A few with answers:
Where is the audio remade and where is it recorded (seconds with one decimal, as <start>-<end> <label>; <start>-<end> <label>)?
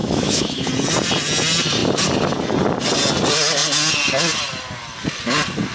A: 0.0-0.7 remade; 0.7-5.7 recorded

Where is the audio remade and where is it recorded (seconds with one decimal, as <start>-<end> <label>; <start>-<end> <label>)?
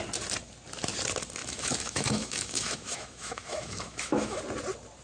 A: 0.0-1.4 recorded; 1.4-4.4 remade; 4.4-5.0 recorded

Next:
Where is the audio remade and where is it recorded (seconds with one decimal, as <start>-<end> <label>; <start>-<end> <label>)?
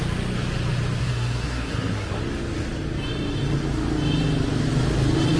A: 0.0-1.0 recorded; 1.0-2.2 remade; 2.2-5.4 recorded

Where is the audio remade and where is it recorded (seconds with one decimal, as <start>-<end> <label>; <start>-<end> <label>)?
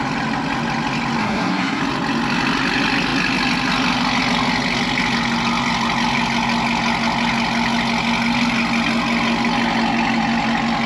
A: 0.0-1.2 recorded; 1.2-1.8 remade; 1.8-10.9 recorded